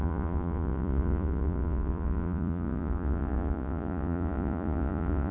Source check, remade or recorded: remade